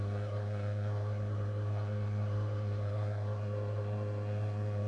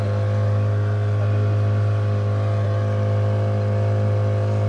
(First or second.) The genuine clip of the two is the second